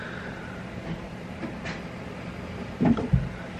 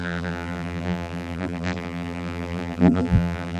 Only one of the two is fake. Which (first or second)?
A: second